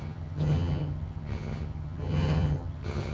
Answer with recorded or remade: remade